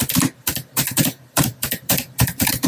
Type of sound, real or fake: fake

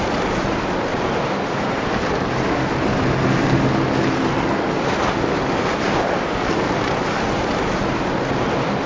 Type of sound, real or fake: real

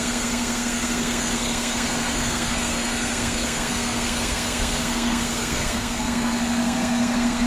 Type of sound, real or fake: fake